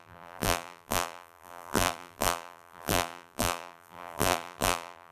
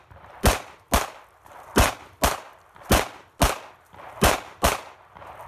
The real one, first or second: second